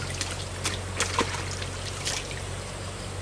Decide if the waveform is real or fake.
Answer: real